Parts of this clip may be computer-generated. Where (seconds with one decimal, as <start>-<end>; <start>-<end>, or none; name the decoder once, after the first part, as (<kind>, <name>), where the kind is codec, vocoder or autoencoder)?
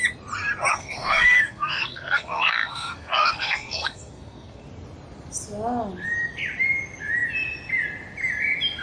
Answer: 0.7-4.6 (codec, SNAC)